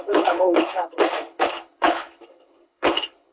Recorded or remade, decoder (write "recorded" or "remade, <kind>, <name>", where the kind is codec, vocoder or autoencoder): remade, codec, HILCodec